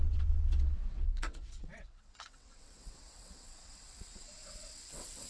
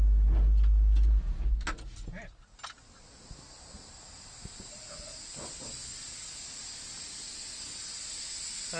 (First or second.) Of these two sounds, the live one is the second